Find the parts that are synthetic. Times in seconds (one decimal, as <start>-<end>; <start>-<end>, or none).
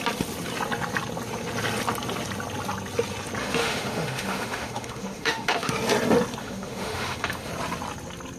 3.4-5.7; 6.4-7.5